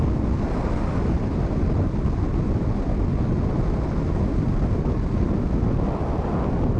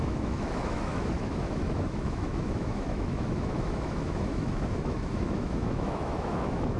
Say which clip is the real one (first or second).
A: first